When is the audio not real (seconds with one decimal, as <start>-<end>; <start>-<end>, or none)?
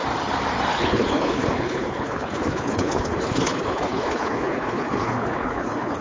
0.7-6.0